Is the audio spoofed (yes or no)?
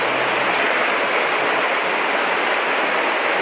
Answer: no